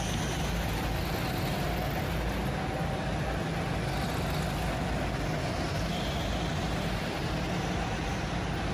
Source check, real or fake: real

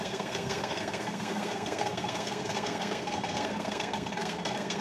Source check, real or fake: fake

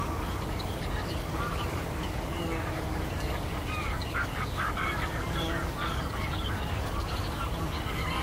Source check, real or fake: fake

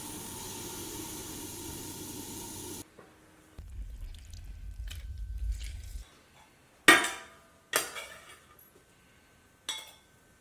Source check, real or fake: real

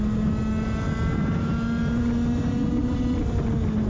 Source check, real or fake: real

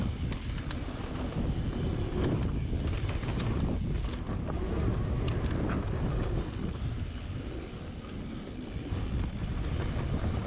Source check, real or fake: real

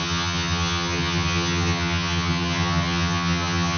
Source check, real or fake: fake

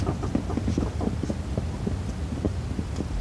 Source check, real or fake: real